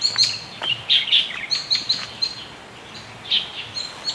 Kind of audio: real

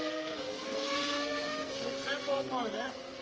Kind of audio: fake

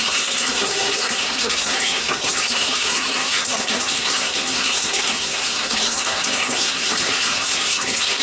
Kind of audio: fake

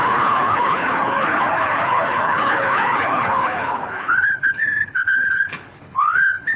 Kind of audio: fake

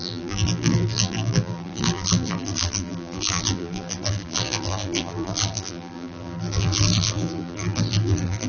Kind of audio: fake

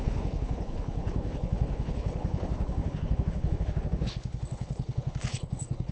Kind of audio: fake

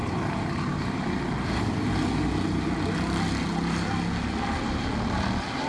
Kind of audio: real